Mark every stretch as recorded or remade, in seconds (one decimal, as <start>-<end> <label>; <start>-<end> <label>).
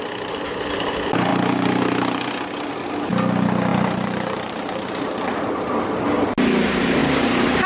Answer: 0.0-3.7 recorded; 3.7-5.5 remade; 5.5-7.0 recorded; 7.0-7.7 remade